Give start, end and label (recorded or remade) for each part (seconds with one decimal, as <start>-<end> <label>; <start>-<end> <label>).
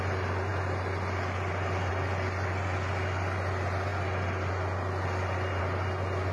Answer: 0.0-6.3 recorded